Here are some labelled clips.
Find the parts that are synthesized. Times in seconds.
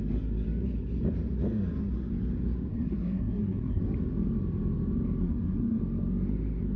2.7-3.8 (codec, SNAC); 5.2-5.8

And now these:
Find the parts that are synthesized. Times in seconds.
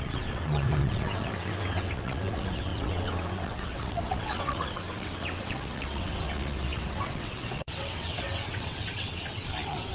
0.0-9.9 (vocoder, WaveNeXt)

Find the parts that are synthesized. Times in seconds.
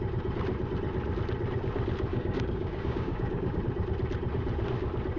2.1-3.6 (codec, DAC)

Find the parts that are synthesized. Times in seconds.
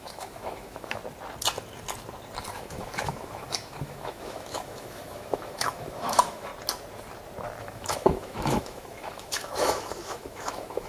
0.0-1.0 (autoencoder, DAC-VAE); 2.5-6.5; 7.6-10.9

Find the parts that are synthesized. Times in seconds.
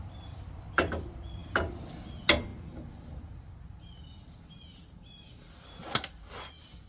none